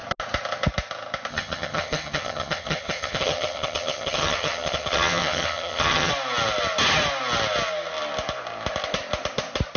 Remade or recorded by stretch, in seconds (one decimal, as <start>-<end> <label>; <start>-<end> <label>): 0.0-1.3 recorded; 1.3-6.1 remade; 6.1-9.8 recorded